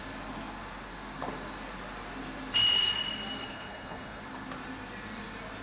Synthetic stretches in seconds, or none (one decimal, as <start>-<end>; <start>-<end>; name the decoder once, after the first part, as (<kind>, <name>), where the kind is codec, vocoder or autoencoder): 3.4-4.2 (codec, HILCodec)